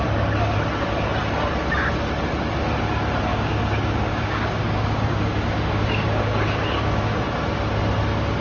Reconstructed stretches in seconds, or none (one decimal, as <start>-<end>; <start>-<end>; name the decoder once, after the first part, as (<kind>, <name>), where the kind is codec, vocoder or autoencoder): 3.3-7.1 (codec, DAC)